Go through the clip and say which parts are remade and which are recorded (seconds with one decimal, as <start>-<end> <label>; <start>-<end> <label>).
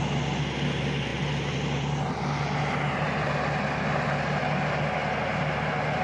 0.0-6.0 recorded